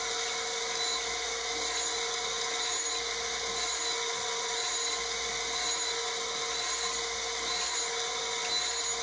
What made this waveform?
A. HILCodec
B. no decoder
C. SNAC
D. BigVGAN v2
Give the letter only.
B